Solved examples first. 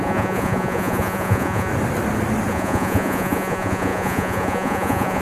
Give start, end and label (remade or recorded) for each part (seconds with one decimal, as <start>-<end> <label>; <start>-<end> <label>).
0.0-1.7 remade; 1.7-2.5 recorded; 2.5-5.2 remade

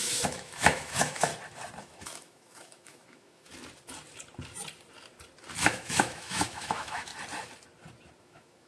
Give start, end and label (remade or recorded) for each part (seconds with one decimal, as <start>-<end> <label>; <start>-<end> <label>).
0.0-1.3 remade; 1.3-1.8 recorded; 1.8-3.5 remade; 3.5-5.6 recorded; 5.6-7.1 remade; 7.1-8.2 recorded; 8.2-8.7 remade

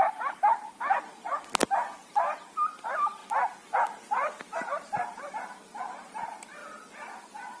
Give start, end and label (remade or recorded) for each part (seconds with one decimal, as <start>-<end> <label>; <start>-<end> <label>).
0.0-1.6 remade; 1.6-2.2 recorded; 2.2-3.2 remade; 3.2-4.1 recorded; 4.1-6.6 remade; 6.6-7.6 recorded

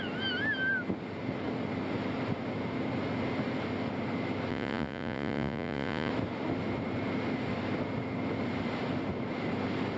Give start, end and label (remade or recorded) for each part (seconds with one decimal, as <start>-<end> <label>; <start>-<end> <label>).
0.0-4.5 recorded; 4.5-6.1 remade; 6.1-10.0 recorded

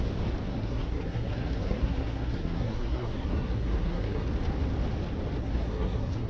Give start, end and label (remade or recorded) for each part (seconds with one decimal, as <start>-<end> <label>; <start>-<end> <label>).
0.0-0.5 recorded; 0.5-4.3 remade; 4.3-5.4 recorded; 5.4-6.3 remade